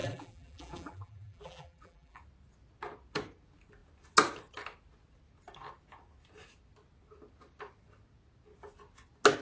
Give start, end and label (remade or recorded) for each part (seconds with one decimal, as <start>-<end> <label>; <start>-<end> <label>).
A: 0.0-2.2 remade; 2.2-9.4 recorded